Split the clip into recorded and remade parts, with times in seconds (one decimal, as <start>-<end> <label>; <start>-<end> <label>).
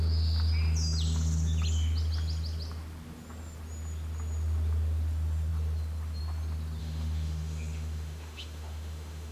0.0-6.8 recorded; 6.8-9.3 remade